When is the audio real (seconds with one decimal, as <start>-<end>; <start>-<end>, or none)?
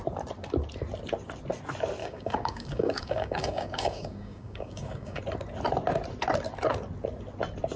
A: 0.0-2.0; 5.2-7.8